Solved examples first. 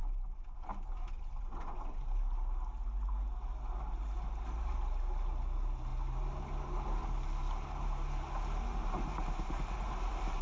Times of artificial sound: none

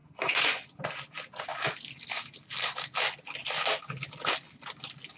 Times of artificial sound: 0.0-0.8 (vocoder, Vocos)